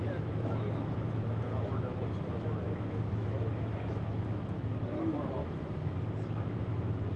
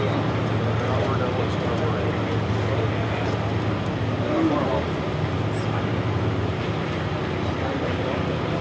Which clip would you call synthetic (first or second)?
first